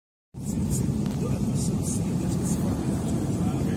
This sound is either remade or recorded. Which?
remade